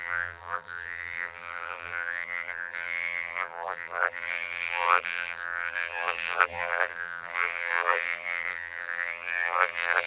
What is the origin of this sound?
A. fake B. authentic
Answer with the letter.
A